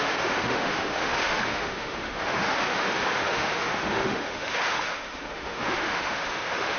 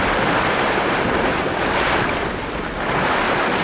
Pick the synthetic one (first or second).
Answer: first